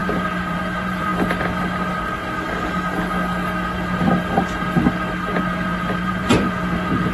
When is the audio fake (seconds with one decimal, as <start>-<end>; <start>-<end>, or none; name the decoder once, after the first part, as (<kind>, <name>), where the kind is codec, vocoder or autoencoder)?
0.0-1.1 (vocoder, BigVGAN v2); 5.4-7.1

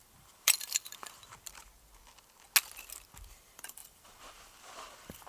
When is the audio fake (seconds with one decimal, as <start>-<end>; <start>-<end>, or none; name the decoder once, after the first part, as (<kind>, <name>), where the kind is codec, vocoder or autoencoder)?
0.0-1.2 (vocoder, BigVGAN v2); 3.3-5.3

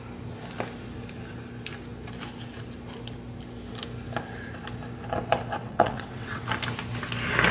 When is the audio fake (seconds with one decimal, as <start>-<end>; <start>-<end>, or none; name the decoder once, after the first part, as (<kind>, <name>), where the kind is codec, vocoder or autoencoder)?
5.6-6.4 (vocoder, WaveNeXt)

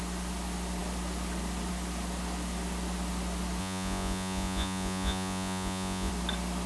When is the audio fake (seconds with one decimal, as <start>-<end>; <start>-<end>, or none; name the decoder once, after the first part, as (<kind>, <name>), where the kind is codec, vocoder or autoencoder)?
3.6-6.1 (vocoder, Vocos)

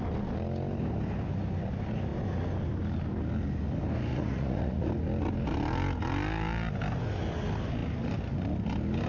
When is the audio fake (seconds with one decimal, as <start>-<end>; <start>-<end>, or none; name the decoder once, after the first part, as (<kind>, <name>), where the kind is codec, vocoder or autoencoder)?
4.1-4.9 (vocoder, Vocos)

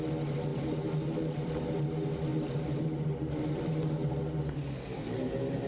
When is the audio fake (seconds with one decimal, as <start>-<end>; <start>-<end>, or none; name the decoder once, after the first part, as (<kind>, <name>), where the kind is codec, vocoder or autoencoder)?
0.5-1.6 (vocoder, BigVGAN v2); 2.3-3.9

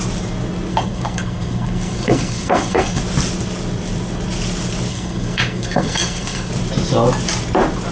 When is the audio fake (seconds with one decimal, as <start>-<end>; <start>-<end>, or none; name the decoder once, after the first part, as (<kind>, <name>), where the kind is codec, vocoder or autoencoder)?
0.7-3.0 (codec, SNAC); 4.9-6.5